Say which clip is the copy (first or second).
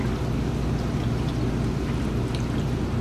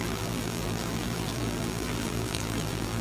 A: second